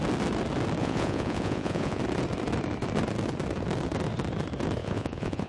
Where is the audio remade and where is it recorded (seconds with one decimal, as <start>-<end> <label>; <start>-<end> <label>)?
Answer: 0.0-0.8 recorded; 0.8-2.0 remade; 2.0-4.8 recorded; 4.8-5.5 remade